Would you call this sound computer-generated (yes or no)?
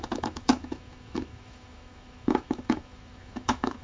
yes